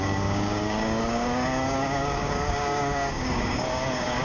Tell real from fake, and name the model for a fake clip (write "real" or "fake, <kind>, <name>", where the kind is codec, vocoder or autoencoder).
fake, codec, DAC